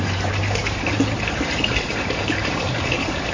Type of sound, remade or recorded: remade